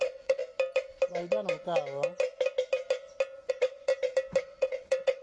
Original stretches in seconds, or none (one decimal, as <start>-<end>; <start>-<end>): 0.4-3.5; 3.9-4.4